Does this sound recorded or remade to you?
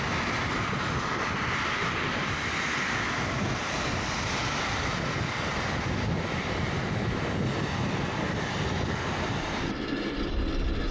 recorded